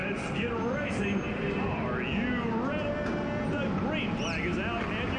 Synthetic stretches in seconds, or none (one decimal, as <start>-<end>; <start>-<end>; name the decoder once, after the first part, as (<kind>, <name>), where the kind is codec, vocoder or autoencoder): none